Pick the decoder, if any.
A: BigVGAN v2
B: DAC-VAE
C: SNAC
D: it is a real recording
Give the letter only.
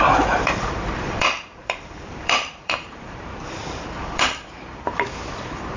A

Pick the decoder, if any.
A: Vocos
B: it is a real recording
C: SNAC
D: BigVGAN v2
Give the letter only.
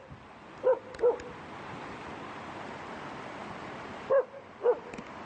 B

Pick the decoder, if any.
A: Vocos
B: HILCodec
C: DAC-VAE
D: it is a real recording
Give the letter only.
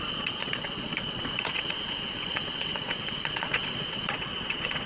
A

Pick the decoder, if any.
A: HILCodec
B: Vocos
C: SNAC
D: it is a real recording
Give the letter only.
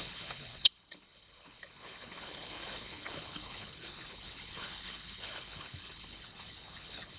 A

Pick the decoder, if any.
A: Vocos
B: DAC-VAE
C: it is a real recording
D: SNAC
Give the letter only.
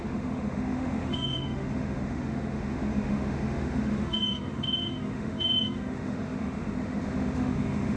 B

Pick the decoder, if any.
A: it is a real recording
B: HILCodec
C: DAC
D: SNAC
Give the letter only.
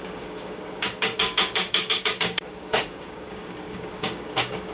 C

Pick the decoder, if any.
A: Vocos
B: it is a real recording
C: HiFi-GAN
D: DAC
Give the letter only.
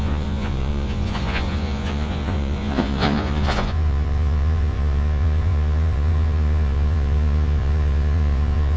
A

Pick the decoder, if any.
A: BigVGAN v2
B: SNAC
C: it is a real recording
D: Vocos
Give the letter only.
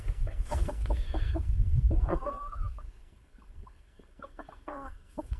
B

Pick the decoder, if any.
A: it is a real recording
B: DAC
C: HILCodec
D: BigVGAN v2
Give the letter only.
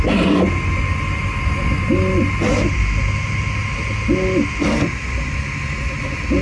A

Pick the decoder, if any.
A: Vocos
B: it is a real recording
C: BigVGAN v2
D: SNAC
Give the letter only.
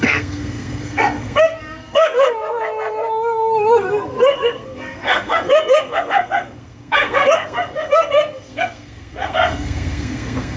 D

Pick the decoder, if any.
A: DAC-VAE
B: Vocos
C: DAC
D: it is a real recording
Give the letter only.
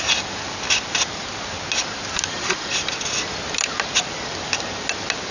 D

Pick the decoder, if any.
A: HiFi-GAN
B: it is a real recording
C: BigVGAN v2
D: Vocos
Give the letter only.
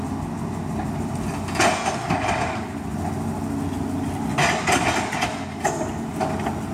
B